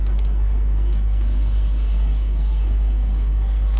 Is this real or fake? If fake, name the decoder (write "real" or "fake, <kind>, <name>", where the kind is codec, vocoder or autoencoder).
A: fake, codec, SNAC